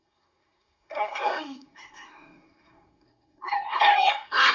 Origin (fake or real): fake